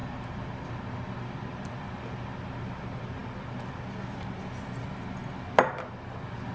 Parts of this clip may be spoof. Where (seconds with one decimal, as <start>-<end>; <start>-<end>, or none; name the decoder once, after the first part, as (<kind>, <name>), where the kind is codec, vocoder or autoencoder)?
0.0-0.7 (vocoder, BigVGAN v2)